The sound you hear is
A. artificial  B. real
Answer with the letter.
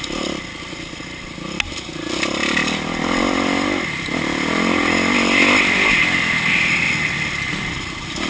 B